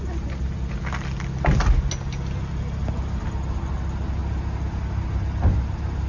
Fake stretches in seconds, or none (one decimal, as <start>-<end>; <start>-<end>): none